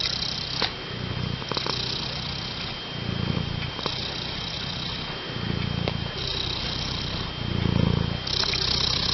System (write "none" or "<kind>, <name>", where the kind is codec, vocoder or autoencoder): none